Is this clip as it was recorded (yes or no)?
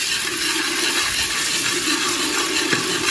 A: yes